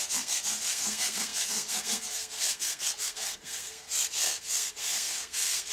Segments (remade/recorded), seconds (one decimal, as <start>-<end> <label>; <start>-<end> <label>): 0.0-5.7 remade